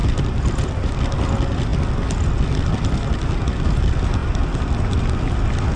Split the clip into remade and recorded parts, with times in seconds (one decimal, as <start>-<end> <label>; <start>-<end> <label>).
0.0-5.8 recorded

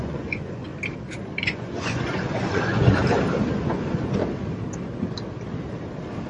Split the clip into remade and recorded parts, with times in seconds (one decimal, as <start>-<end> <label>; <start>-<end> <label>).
0.0-0.7 remade; 0.7-1.4 recorded; 1.4-3.0 remade; 3.0-3.5 recorded; 3.5-4.2 remade; 4.2-6.3 recorded

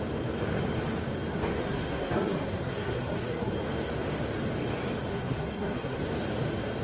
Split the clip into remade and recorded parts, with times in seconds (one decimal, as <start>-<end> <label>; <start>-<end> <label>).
0.0-1.6 recorded; 1.6-3.5 remade; 3.5-5.1 recorded; 5.1-6.0 remade; 6.0-6.8 recorded